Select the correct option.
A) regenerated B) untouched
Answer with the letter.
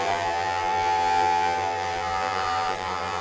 A